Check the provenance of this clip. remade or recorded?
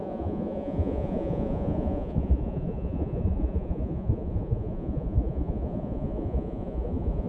remade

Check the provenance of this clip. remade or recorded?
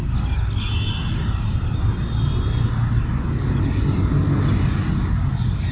recorded